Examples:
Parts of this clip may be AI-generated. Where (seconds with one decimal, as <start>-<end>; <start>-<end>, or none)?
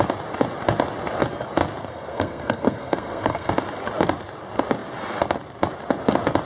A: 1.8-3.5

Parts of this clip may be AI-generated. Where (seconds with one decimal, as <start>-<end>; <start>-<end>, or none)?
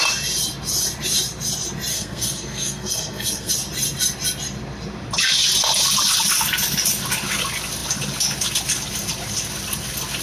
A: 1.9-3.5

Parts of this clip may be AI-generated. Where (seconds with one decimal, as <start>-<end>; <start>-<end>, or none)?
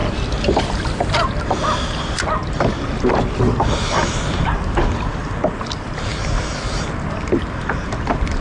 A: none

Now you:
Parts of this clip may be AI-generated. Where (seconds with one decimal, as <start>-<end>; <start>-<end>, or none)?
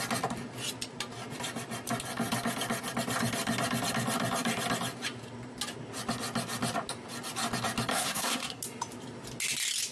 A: 7.9-8.6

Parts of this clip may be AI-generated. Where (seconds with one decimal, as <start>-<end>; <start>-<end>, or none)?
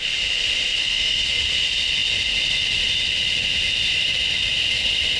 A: 0.8-1.4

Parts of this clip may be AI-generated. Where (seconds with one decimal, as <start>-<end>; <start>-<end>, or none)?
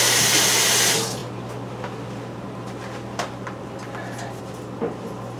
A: none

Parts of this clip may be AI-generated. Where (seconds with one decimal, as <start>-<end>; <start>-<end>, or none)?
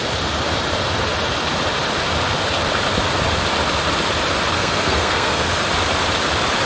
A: 4.5-5.6